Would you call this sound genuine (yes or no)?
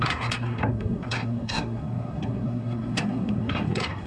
no